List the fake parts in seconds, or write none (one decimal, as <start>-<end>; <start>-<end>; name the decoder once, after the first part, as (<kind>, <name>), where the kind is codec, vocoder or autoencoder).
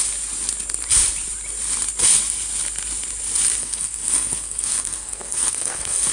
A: 3.6-6.1 (codec, SNAC)